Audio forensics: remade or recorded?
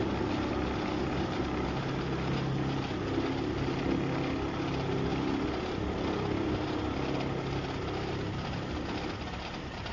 recorded